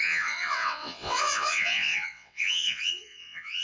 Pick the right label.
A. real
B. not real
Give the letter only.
B